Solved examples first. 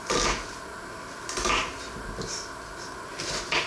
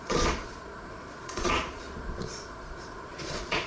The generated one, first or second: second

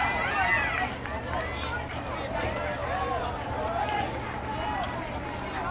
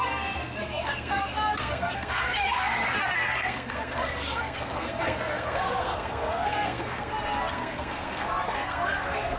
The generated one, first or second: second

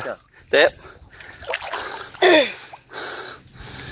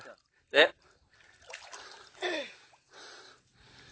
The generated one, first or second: second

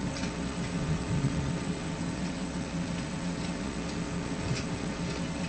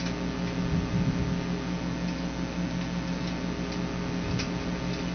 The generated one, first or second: first